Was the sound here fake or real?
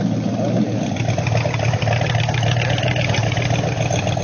real